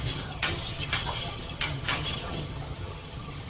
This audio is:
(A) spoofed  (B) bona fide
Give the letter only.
A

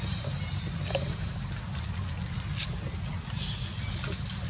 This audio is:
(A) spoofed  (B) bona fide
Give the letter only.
B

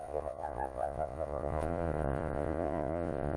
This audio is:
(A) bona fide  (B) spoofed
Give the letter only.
B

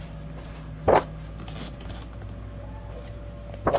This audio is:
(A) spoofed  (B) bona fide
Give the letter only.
B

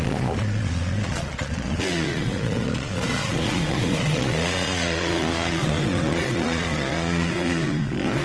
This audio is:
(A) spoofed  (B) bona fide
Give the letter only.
A